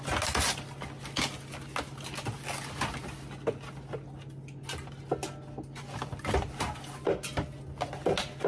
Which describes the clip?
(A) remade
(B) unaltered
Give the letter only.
B